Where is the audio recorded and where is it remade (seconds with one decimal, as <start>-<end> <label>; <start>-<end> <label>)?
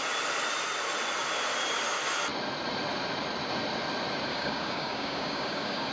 0.0-4.3 recorded; 4.3-5.9 remade